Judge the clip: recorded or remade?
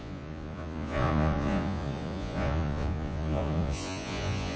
remade